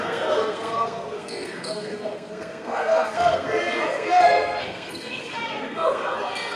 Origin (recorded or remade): remade